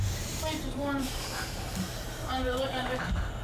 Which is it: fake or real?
fake